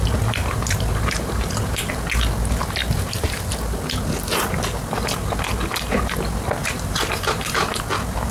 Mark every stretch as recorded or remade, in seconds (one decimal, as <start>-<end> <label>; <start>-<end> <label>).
0.0-0.4 recorded; 0.4-1.9 remade; 1.9-2.8 recorded; 2.8-3.4 remade; 3.4-6.6 recorded; 6.6-7.7 remade; 7.7-8.3 recorded

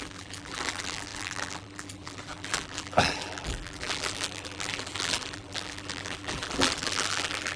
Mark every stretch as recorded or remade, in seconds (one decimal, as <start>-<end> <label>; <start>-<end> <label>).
0.0-7.6 remade

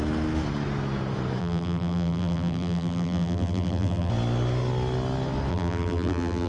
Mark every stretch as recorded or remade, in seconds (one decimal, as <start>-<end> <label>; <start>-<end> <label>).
0.0-1.4 recorded; 1.4-4.1 remade; 4.1-5.5 recorded; 5.5-6.5 remade